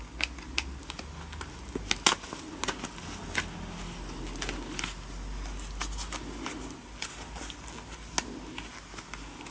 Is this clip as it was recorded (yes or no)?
yes